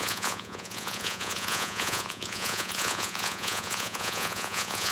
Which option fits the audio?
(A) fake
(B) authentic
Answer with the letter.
A